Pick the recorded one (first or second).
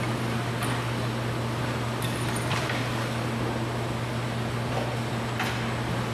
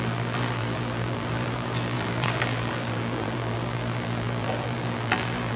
first